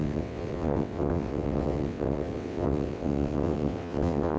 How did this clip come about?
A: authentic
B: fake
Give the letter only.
B